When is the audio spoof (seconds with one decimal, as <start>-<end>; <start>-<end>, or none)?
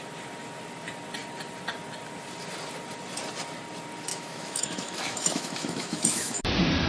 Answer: 4.1-6.4